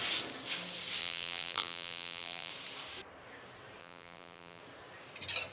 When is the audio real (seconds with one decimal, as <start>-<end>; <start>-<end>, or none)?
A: 0.0-1.0; 2.5-3.8; 4.6-5.5

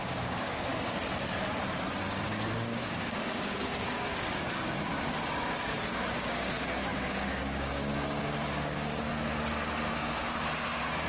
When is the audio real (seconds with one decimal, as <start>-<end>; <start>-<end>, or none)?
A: 0.7-2.0; 4.9-5.6; 9.1-9.9